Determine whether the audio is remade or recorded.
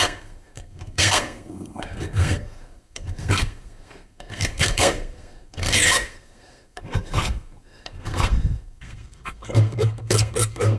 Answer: remade